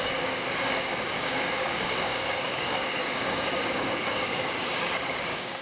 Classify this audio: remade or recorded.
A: remade